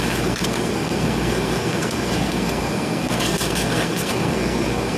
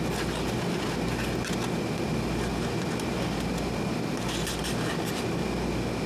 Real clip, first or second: second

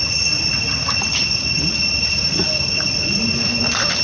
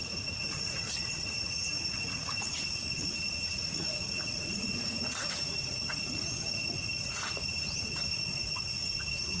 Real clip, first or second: first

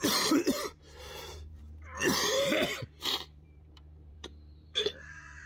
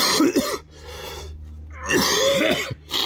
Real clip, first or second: second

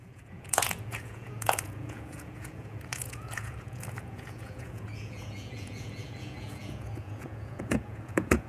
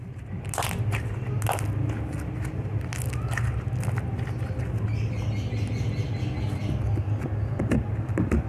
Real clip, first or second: second